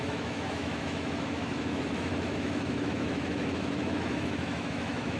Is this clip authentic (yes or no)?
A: no